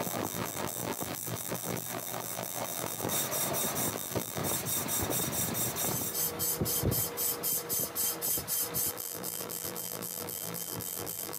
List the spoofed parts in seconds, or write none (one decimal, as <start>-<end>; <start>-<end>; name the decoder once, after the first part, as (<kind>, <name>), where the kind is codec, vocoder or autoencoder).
0.0-3.1 (vocoder, BigVGAN v2); 3.9-4.4; 8.9-11.4